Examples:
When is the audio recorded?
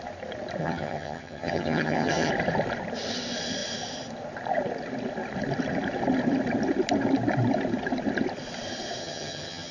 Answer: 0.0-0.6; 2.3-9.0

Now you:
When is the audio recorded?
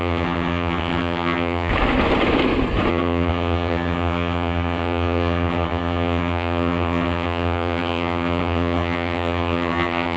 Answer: 1.7-2.9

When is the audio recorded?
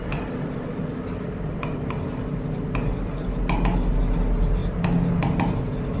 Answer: 0.0-6.0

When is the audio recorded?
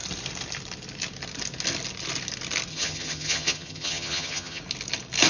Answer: 0.0-2.7; 4.6-5.3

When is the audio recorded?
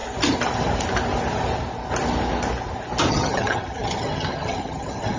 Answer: 0.0-3.1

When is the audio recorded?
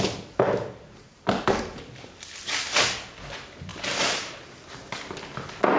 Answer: 0.0-5.8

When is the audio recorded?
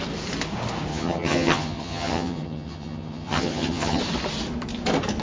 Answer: 0.0-0.9; 4.0-5.2